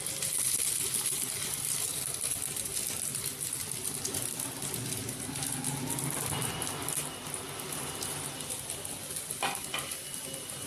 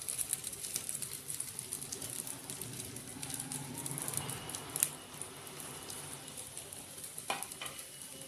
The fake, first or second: second